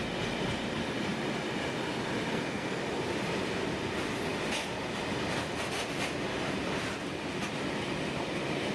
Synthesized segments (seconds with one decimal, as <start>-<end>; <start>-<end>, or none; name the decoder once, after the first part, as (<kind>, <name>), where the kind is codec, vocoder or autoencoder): 2.3-2.8 (codec, SNAC)

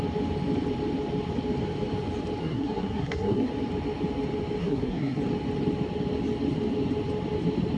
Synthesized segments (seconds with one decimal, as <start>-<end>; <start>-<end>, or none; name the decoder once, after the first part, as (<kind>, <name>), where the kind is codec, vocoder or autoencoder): 2.4-3.5 (codec, SNAC); 4.6-5.2

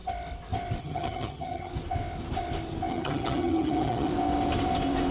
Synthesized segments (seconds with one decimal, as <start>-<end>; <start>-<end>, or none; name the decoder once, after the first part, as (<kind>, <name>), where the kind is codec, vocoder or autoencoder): 0.8-1.7 (vocoder, HiFi-GAN); 2.9-4.1

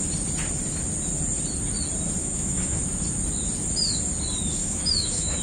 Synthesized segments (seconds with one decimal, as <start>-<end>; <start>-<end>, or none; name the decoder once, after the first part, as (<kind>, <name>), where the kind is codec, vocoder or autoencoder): 2.2-3.0 (autoencoder, DAC-VAE); 4.6-5.4